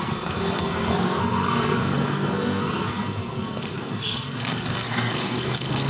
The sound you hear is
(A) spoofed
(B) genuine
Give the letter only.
A